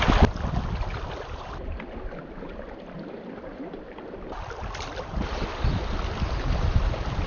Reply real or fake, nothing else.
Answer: real